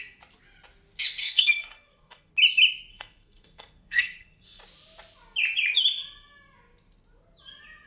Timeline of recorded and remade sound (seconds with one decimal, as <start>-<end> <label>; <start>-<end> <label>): 0.0-1.2 recorded; 1.2-2.3 remade; 2.3-2.9 recorded; 2.9-4.6 remade; 4.6-7.9 recorded